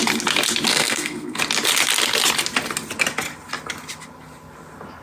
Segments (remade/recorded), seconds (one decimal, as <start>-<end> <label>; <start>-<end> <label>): 0.0-0.7 recorded; 0.7-1.4 remade; 1.4-5.0 recorded